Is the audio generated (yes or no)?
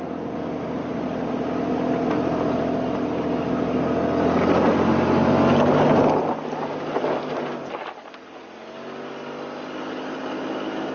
no